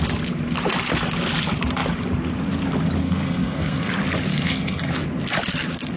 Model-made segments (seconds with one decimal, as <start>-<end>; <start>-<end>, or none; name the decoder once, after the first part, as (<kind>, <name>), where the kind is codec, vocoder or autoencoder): 3.0-3.9 (codec, SNAC); 4.3-4.9